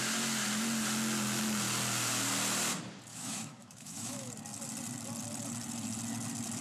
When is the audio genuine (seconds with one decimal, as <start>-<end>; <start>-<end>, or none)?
0.0-3.1; 4.3-6.6